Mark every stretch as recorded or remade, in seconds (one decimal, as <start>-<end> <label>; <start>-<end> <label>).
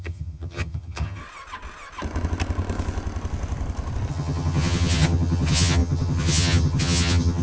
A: 0.0-1.2 remade; 1.2-4.1 recorded; 4.1-7.4 remade